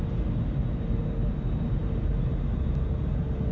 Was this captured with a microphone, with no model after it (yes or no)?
yes